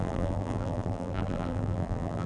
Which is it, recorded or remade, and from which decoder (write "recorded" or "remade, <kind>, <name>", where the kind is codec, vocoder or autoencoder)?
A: remade, vocoder, BigVGAN v2